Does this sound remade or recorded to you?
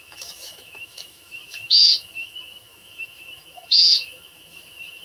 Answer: remade